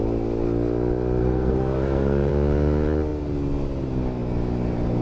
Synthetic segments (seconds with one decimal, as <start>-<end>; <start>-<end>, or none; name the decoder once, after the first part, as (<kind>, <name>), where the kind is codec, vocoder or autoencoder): 1.2-2.3 (codec, SNAC)

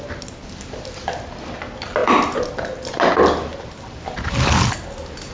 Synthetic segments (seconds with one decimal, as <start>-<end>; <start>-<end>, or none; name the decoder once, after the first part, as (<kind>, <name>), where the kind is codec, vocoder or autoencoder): none

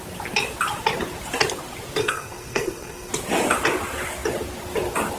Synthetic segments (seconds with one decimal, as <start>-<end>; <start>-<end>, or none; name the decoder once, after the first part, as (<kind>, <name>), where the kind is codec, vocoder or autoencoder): 2.0-3.1 (codec, SNAC)

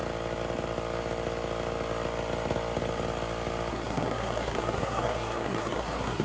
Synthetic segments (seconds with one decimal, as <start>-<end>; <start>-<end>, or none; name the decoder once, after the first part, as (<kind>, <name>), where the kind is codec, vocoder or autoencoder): 3.7-6.2 (codec, SNAC)

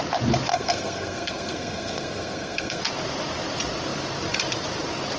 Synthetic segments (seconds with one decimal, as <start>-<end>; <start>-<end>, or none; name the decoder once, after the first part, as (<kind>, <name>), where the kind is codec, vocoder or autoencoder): 0.5-2.8 (codec, SNAC)

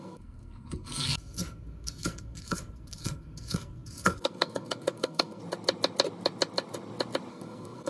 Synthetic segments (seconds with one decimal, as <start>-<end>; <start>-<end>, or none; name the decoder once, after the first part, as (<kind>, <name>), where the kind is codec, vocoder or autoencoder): 0.0-5.4 (codec, SNAC); 7.3-7.9

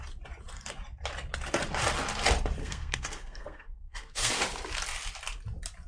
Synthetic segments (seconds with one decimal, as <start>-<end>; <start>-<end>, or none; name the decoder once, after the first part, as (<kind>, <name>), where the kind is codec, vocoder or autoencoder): 2.6-4.3 (codec, SNAC)

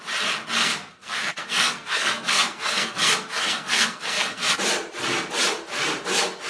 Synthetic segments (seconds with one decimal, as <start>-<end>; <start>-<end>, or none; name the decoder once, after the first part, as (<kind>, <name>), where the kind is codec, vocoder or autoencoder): 0.6-4.5 (codec, SNAC)